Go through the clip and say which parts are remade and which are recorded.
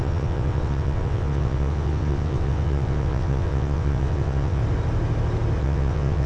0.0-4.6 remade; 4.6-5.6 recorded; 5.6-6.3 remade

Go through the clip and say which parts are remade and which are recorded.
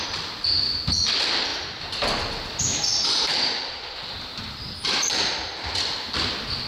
0.0-6.7 recorded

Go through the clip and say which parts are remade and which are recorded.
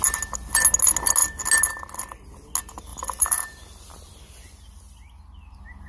0.0-2.9 recorded; 2.9-4.8 remade; 4.8-5.9 recorded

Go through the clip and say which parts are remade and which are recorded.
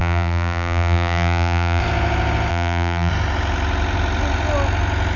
0.0-1.8 remade; 1.8-2.5 recorded; 2.5-3.1 remade; 3.1-5.2 recorded